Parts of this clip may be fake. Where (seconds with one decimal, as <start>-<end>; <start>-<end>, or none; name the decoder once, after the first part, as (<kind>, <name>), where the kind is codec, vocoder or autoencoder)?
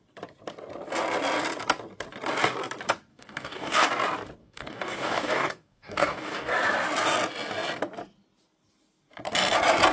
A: 3.1-3.9 (codec, DAC); 4.4-6.5